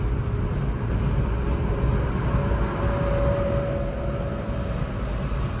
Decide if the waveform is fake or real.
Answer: real